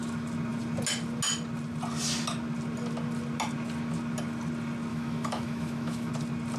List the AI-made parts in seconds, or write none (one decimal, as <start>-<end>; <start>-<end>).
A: 4.9-6.1